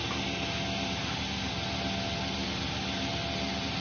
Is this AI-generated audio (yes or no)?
no